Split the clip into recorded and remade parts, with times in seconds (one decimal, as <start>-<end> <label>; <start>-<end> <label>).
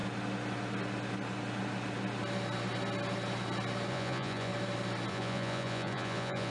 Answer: 0.0-3.9 recorded; 3.9-4.5 remade; 4.5-5.1 recorded; 5.1-6.5 remade